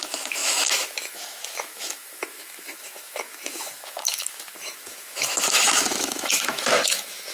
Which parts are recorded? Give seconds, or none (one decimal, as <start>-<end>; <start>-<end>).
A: none